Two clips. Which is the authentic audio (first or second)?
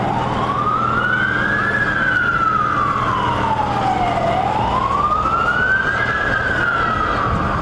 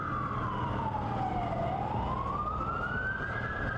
first